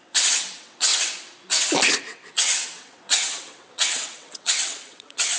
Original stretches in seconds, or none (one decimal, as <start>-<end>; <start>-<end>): 0.9-2.1